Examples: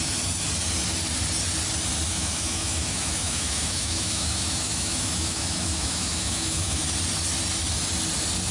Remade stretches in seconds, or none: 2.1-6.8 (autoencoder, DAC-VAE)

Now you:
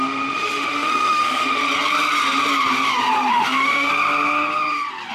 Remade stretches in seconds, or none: 0.0-1.6 (autoencoder, DAC-VAE); 3.3-3.9